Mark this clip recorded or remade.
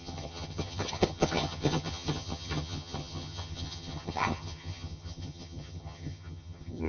remade